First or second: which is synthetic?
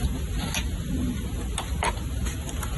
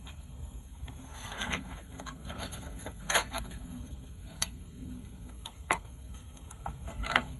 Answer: second